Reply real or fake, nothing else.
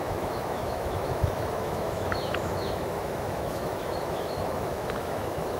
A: fake